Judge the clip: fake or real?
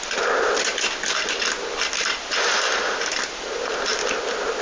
real